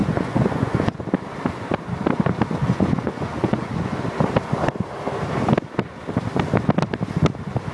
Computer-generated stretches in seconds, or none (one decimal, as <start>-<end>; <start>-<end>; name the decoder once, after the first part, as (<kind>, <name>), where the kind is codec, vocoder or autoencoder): 0.0-1.0 (vocoder, Vocos); 2.6-4.0